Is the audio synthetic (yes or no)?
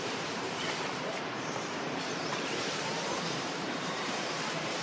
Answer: yes